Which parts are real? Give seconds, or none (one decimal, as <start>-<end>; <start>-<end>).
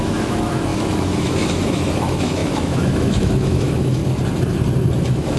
4.0-5.0